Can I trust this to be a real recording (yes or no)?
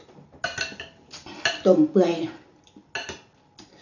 yes